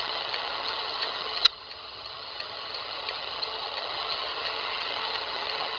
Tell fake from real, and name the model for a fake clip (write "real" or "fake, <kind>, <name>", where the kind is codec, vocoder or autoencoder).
fake, vocoder, HiFi-GAN